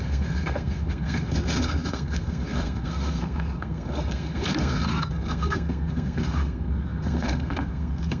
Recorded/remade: remade